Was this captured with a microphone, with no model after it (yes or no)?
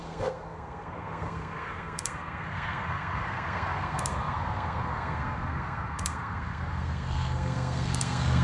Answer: no